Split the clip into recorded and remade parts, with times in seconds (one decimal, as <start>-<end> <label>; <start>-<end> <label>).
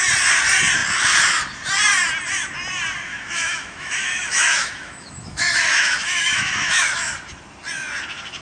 0.0-3.1 recorded; 3.1-7.1 remade; 7.1-8.4 recorded